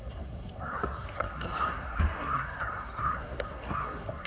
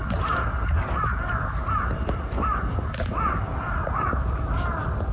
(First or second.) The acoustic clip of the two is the second